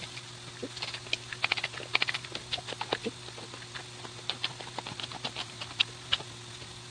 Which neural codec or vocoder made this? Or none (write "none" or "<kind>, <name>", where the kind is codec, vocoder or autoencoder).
none